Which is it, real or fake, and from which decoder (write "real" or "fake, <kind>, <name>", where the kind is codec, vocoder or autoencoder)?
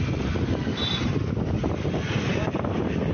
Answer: real